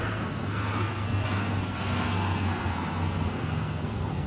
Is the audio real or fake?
fake